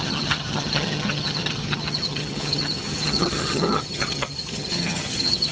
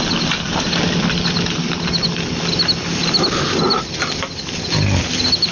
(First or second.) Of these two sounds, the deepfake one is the first